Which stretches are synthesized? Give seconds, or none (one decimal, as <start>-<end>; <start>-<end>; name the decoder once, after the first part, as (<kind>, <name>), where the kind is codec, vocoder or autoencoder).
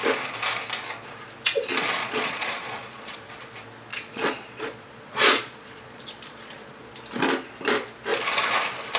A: 2.0-3.3 (vocoder, Vocos); 3.9-7.0